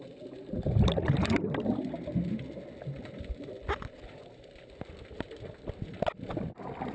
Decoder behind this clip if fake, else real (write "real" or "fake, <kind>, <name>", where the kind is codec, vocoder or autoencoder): real